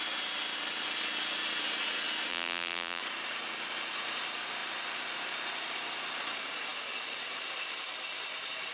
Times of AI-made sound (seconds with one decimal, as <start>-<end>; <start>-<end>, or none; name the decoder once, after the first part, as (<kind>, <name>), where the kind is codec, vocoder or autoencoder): 2.3-3.0 (vocoder, BigVGAN v2)